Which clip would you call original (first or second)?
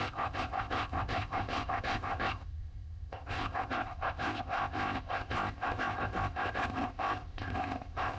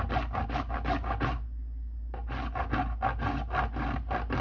second